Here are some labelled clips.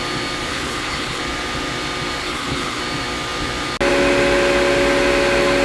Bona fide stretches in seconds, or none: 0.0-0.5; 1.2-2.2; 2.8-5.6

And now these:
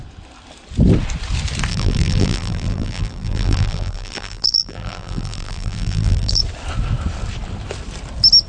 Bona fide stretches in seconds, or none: 0.0-1.7; 6.4-8.5

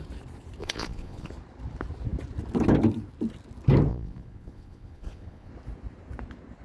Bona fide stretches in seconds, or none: 0.0-0.6; 1.3-3.9; 5.5-6.6

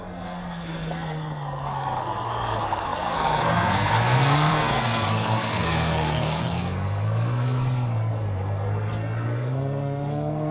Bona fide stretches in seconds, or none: none

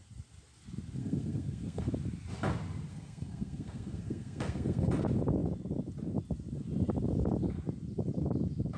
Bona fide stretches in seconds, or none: 0.0-1.0; 1.9-2.9; 4.9-8.8

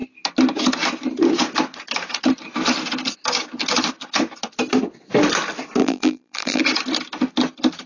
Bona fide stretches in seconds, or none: 0.0-5.8; 6.6-7.9

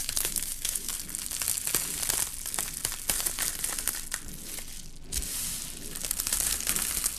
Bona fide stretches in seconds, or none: 0.9-7.2

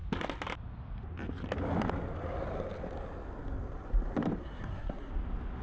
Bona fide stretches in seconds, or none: 0.0-4.4; 5.1-5.6